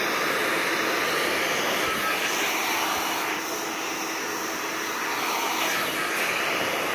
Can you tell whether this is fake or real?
real